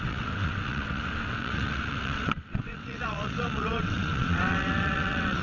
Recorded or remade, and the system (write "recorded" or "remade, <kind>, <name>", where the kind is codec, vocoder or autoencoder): remade, vocoder, WaveNeXt